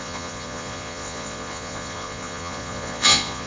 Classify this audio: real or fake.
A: fake